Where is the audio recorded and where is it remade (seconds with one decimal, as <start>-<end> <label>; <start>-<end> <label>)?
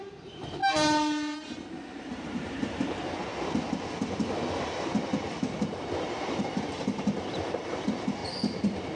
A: 0.0-0.6 remade; 0.6-2.0 recorded; 2.0-3.3 remade; 3.3-6.4 recorded; 6.4-8.2 remade; 8.2-9.0 recorded